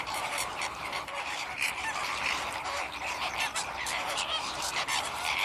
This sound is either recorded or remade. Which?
remade